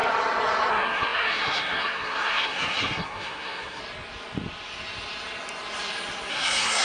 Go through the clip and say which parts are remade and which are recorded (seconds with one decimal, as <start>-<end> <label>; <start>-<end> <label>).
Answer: 0.0-0.7 recorded; 0.7-3.8 remade; 3.8-6.3 recorded; 6.3-6.8 remade